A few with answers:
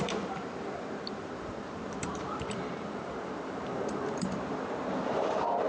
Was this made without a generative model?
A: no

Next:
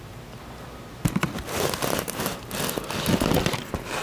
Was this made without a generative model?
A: yes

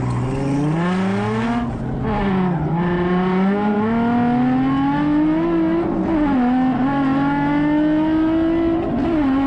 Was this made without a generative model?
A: yes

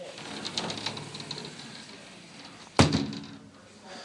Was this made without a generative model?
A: no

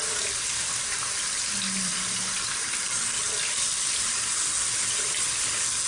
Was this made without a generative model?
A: no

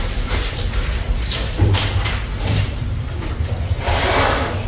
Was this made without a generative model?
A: no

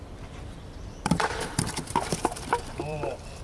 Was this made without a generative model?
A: no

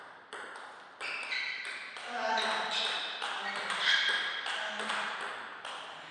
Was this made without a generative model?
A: no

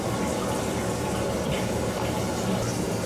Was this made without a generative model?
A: no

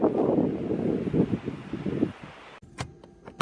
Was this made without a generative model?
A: yes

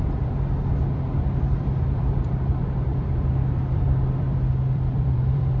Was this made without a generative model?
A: no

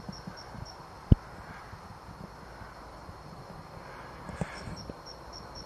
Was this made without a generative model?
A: no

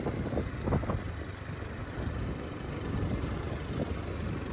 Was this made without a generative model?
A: no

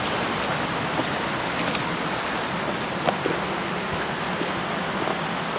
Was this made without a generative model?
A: yes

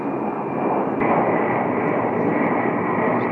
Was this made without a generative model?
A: yes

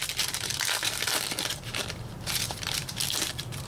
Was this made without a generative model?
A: no